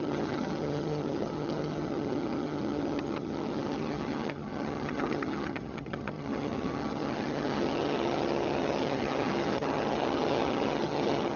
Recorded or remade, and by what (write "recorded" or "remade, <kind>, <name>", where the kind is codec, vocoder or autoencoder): remade, vocoder, HiFi-GAN